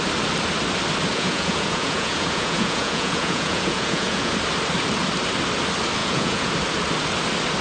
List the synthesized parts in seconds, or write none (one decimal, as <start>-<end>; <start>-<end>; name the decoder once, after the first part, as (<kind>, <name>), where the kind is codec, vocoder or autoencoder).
1.1-4.3 (vocoder, Vocos); 6.0-6.5

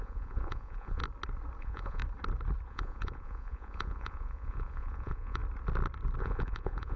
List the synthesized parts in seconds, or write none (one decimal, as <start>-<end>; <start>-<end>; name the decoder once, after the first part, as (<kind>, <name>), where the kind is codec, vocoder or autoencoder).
0.0-1.0 (vocoder, Vocos); 1.6-2.0; 2.7-5.4; 6.2-7.0